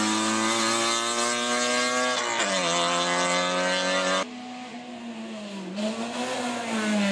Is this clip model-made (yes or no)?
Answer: no